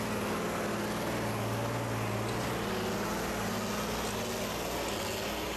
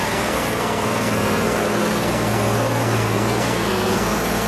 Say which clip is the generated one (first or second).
second